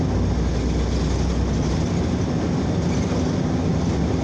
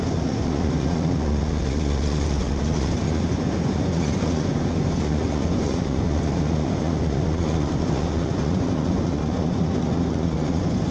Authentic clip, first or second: first